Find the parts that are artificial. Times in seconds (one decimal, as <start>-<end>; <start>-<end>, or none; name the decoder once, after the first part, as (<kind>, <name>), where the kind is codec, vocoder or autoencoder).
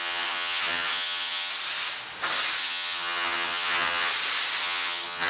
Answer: 0.0-1.5 (vocoder, HiFi-GAN); 2.6-4.1; 4.6-5.3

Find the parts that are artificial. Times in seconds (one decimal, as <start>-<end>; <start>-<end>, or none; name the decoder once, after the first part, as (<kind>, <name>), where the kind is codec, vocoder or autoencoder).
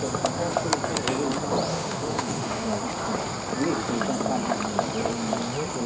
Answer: 1.7-2.8 (autoencoder, DAC-VAE)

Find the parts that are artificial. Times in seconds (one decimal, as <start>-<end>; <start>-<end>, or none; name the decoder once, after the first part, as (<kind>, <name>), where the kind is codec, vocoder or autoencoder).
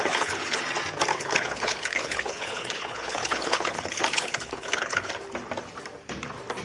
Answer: 0.0-0.6 (codec, HILCodec); 1.1-5.1